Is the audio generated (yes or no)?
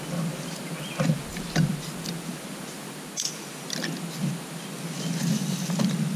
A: no